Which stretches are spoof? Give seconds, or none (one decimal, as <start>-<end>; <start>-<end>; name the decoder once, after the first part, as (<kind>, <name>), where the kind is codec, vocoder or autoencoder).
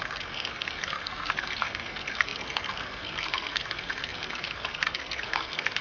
0.0-5.8 (codec, SNAC)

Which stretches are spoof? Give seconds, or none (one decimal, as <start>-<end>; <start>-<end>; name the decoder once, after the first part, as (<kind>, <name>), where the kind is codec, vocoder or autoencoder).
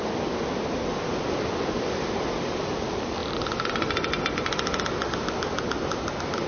none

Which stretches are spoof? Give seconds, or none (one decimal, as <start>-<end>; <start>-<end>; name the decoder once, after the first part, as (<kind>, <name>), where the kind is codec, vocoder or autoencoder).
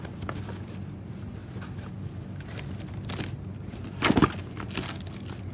none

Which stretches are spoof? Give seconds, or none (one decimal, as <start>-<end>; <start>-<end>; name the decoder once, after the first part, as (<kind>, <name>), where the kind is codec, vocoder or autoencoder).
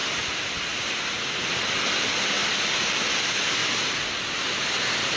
2.4-3.0 (vocoder, BigVGAN v2)